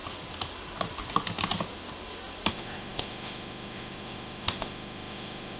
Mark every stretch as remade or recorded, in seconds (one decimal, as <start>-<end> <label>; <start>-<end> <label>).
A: 0.0-2.5 recorded; 2.5-5.6 remade